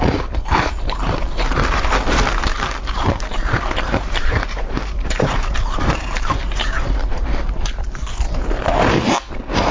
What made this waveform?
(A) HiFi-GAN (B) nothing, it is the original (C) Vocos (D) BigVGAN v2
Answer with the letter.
D